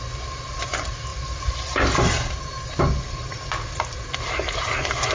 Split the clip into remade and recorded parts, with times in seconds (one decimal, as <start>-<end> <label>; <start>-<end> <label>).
0.0-5.1 recorded